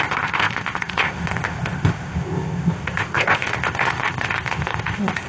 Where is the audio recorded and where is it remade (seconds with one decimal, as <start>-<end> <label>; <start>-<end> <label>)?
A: 0.0-5.3 remade